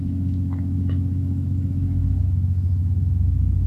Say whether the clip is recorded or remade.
remade